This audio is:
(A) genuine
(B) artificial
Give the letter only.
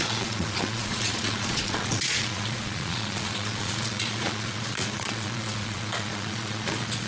B